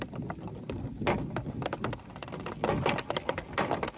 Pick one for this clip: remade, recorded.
recorded